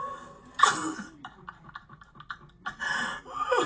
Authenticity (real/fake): real